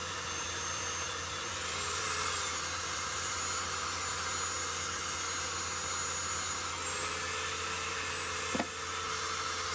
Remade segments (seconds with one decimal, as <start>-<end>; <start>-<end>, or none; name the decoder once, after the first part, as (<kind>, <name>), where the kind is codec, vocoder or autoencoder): 0.0-3.3 (vocoder, BigVGAN v2)